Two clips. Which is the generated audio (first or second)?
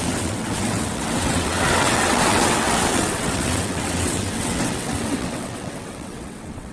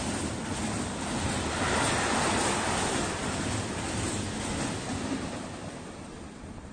first